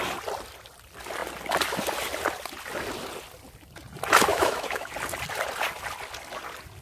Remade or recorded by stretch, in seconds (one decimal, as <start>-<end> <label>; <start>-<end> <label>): 0.0-4.3 recorded; 4.3-4.9 remade; 4.9-6.8 recorded